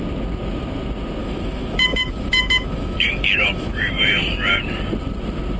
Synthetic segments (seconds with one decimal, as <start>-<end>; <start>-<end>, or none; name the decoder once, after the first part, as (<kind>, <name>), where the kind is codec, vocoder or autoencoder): 1.2-4.6 (autoencoder, DAC-VAE)